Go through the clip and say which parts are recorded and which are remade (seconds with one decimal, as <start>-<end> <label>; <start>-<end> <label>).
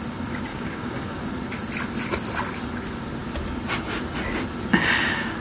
0.0-0.5 recorded; 0.5-1.2 remade; 1.2-5.4 recorded